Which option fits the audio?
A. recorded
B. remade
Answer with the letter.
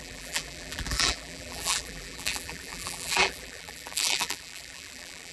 B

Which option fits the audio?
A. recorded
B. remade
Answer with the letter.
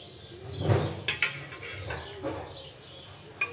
A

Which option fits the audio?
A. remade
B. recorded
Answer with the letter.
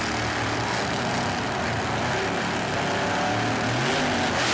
B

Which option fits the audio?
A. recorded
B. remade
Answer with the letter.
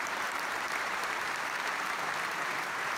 B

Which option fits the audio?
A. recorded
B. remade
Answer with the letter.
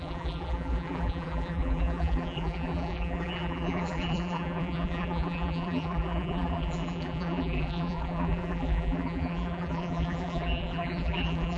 B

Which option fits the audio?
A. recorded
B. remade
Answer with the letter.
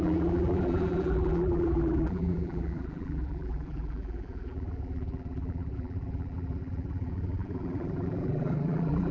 B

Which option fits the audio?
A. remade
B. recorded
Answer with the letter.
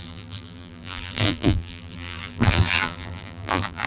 A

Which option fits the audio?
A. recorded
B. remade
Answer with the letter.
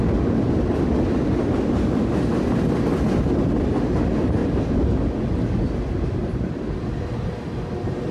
A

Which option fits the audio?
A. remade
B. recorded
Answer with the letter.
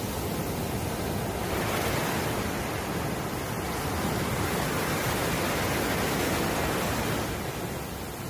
B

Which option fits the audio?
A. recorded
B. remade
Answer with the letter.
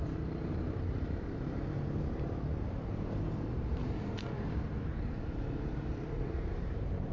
B